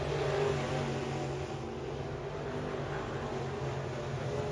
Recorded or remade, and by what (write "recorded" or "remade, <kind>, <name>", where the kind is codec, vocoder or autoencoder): recorded